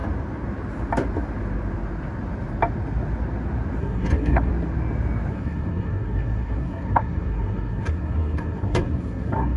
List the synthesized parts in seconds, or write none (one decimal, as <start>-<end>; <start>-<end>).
3.8-4.5; 5.3-9.6